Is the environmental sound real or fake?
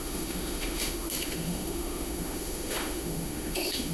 fake